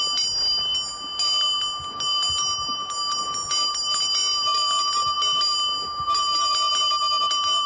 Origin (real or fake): real